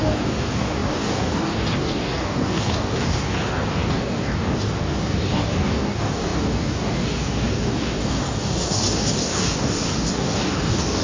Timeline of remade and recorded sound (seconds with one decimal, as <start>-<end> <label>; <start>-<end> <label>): 0.0-11.0 remade